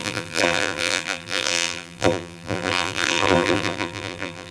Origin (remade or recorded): remade